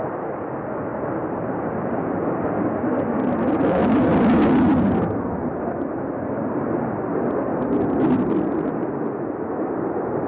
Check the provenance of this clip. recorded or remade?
recorded